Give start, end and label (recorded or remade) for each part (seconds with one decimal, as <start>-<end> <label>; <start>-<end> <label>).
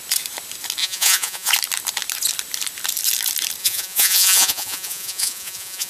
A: 0.0-0.8 recorded; 0.8-1.5 remade; 1.5-3.6 recorded; 3.6-5.9 remade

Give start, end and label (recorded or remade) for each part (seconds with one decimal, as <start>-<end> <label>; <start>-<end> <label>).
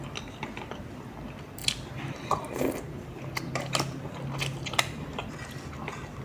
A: 0.0-1.6 recorded; 1.6-5.3 remade; 5.3-6.2 recorded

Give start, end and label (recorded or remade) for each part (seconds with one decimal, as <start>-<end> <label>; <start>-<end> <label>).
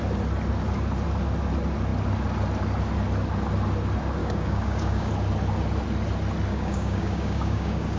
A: 0.0-4.2 recorded; 4.2-5.1 remade; 5.1-6.5 recorded; 6.5-8.0 remade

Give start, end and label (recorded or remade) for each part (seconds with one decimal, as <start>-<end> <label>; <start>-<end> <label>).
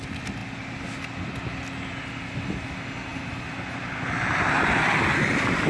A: 0.0-5.7 recorded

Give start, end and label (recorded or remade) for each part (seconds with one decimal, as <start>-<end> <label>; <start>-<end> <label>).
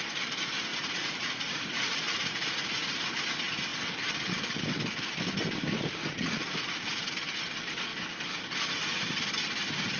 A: 0.0-0.7 recorded; 0.7-2.8 remade; 2.8-6.0 recorded; 6.0-7.1 remade; 7.1-10.0 recorded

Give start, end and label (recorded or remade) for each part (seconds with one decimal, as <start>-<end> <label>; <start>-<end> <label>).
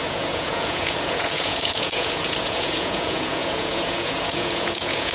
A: 0.0-5.1 remade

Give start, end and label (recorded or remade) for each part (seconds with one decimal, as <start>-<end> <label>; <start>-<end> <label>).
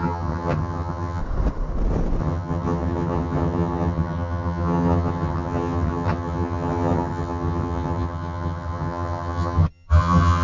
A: 0.0-1.2 remade; 1.2-2.2 recorded; 2.2-10.4 remade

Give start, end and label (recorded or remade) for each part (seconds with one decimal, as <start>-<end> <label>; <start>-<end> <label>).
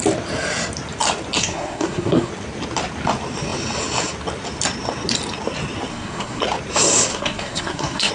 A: 0.0-1.4 recorded; 1.4-2.3 remade; 2.3-5.9 recorded; 5.9-6.4 remade; 6.4-7.1 recorded; 7.1-8.1 remade